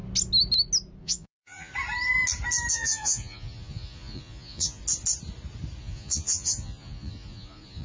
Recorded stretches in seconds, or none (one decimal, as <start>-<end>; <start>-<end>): 0.0-1.0; 1.7-2.7; 4.8-5.8